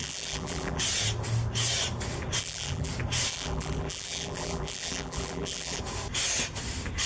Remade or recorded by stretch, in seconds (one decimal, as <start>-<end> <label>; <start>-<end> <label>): 0.0-0.8 remade; 0.8-2.4 recorded; 2.4-2.9 remade; 2.9-3.3 recorded; 3.3-5.8 remade; 5.8-7.1 recorded